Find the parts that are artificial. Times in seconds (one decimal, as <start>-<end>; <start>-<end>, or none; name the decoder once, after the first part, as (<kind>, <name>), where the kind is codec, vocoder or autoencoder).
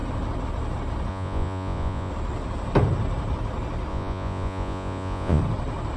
1.1-2.1 (vocoder, Vocos); 3.9-5.4